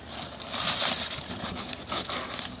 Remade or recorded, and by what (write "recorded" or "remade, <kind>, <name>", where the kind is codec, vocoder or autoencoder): recorded